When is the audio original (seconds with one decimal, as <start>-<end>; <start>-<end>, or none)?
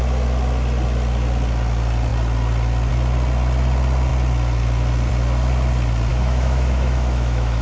0.0-6.1